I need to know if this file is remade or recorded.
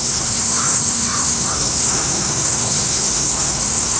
remade